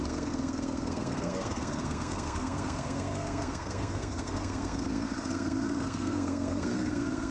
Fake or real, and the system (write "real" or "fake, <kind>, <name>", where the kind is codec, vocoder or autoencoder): fake, codec, SNAC